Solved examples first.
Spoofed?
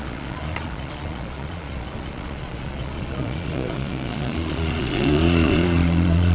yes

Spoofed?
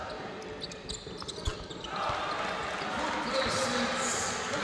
no